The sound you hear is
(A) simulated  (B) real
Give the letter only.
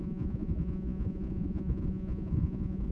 A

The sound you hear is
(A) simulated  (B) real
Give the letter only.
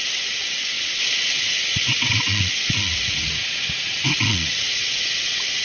A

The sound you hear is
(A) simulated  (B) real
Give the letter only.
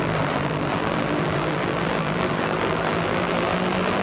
A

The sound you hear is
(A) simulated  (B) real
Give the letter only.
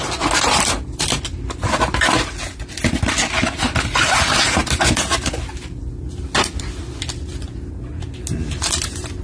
B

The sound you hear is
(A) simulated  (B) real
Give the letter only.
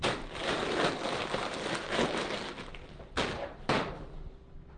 B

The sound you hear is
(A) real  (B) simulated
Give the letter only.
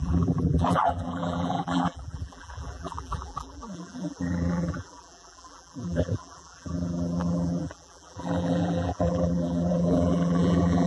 B